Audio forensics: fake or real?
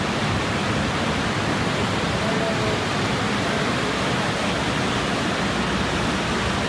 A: real